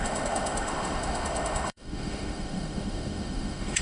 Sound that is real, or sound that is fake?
fake